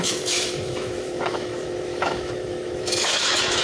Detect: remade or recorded remade